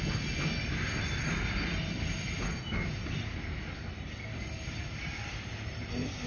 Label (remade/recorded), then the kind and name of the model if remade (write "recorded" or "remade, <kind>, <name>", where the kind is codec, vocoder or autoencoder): recorded